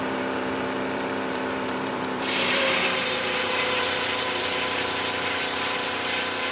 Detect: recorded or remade remade